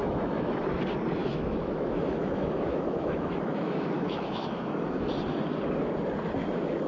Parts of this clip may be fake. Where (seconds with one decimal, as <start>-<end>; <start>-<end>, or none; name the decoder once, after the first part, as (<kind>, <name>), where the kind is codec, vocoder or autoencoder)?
0.0-0.6 (autoencoder, DAC-VAE); 1.2-5.0